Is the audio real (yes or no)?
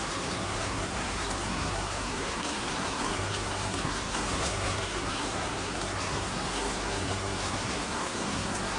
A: no